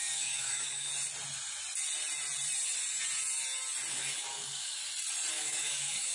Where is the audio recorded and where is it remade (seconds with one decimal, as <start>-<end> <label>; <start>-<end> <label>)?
0.0-0.9 remade; 0.9-3.9 recorded; 3.9-4.8 remade; 4.8-5.3 recorded; 5.3-6.1 remade

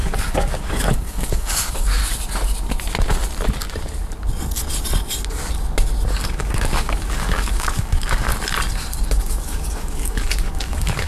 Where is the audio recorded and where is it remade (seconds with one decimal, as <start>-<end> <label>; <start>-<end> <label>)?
0.0-2.0 remade; 2.0-6.1 recorded; 6.1-8.3 remade; 8.3-9.2 recorded; 9.2-11.1 remade

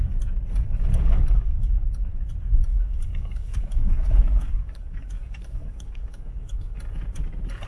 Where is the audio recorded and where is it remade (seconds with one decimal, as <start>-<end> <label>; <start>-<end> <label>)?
0.0-0.9 recorded; 0.9-1.7 remade; 1.7-2.7 recorded; 2.7-6.8 remade; 6.8-7.7 recorded

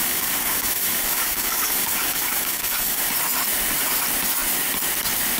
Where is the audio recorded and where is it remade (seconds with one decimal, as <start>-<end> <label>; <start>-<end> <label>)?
0.0-3.1 remade; 3.1-5.4 recorded

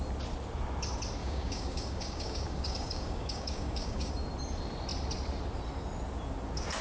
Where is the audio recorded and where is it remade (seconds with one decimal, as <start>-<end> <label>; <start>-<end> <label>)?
0.0-1.2 recorded; 1.2-4.1 remade; 4.1-6.8 recorded